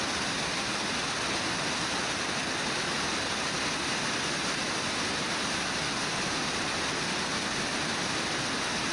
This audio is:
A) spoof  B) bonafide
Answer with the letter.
B